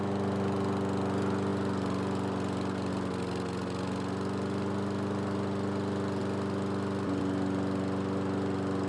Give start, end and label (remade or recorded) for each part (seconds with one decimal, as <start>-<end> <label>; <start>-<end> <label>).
0.0-8.9 recorded